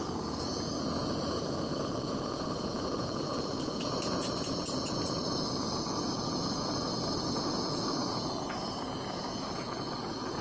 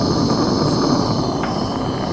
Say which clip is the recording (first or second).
second